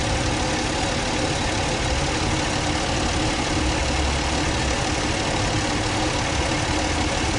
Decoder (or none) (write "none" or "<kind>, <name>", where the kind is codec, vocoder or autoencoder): none